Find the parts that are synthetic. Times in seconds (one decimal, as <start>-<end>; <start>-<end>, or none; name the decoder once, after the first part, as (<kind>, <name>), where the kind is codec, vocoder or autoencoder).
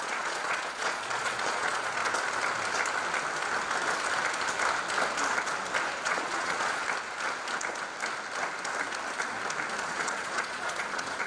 0.0-2.0 (vocoder, Vocos); 6.1-6.8; 9.8-11.3